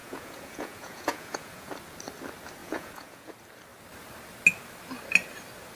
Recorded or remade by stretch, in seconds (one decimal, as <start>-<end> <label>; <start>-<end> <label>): 0.0-1.7 remade; 1.7-2.6 recorded; 2.6-3.3 remade; 3.3-5.8 recorded